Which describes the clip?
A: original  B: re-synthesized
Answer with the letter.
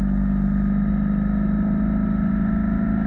A